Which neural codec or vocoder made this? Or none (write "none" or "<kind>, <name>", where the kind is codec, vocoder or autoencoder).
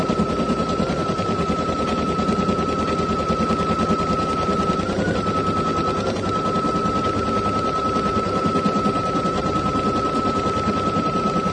none